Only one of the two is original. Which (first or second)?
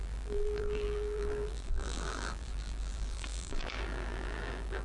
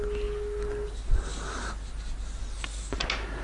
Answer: second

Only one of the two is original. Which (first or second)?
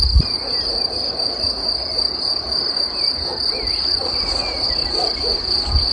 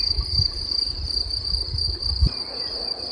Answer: first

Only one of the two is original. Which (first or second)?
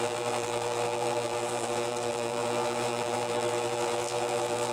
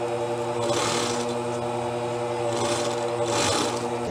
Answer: second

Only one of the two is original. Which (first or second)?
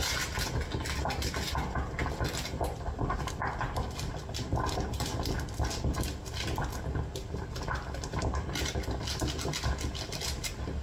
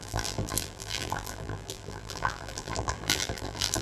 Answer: first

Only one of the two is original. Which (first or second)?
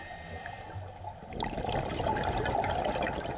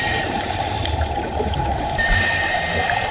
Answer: first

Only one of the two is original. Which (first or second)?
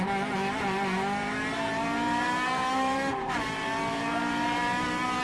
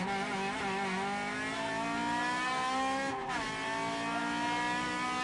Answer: second